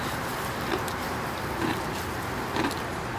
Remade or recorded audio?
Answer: recorded